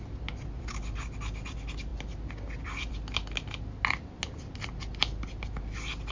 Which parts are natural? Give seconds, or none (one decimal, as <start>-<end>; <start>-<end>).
0.0-6.1